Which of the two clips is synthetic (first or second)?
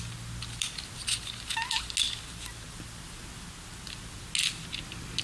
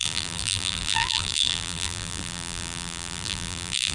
second